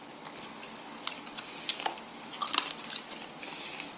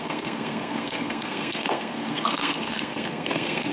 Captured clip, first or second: first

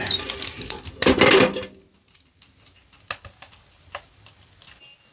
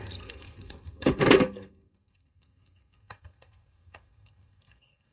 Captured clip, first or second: first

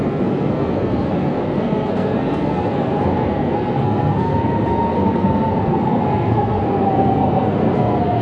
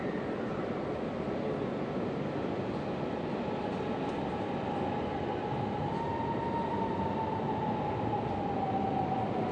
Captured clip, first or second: second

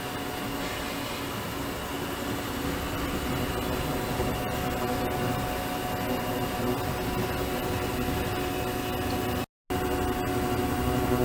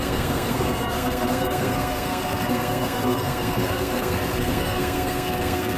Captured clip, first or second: first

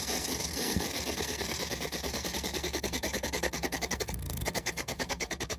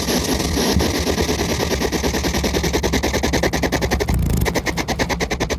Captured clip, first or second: second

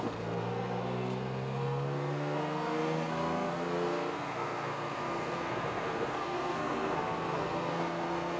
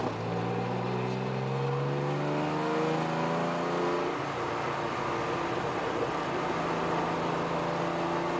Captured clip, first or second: second